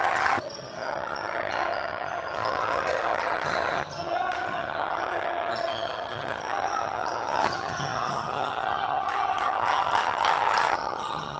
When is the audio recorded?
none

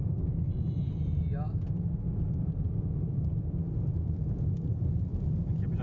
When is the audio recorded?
0.0-5.8